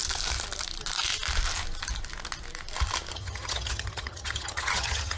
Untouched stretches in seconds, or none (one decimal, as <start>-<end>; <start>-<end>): 0.0-3.1